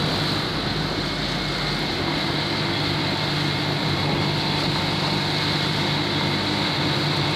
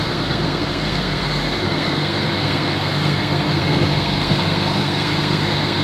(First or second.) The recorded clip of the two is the first